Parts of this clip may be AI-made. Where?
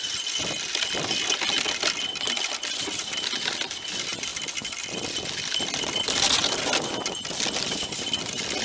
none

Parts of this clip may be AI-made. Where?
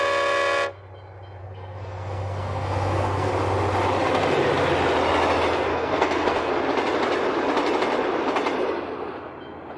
1.4-3.3 (codec, SNAC); 5.7-6.5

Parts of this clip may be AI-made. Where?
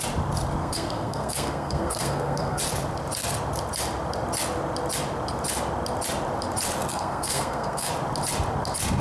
0.6-2.6 (codec, SNAC); 6.9-7.9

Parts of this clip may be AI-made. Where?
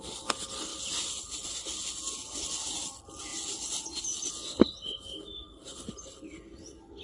none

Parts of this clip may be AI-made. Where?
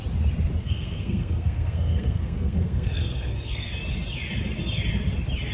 0.6-3.7 (codec, SNAC)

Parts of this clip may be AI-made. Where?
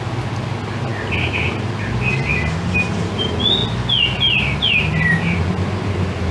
none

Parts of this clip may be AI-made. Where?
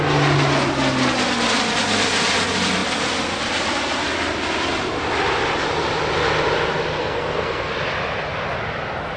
7.0-7.7 (codec, SNAC)